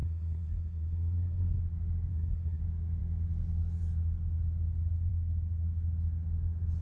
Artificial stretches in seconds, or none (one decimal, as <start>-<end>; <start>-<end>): 0.0-1.6; 2.1-2.6